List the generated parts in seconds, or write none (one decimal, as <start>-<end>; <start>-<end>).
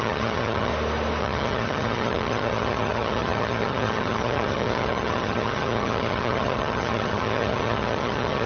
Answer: 0.0-0.7; 1.2-8.5